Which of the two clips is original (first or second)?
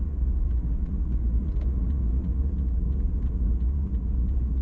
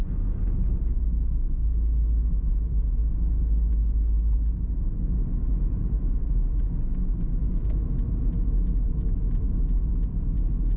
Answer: second